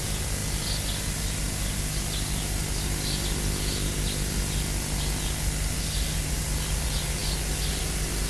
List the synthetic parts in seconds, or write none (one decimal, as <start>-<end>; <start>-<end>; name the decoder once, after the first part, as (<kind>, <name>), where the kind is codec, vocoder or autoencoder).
none